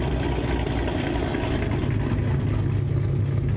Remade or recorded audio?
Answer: recorded